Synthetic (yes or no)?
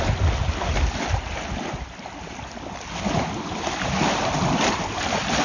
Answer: no